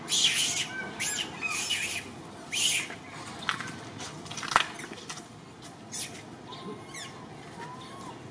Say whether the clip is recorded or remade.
recorded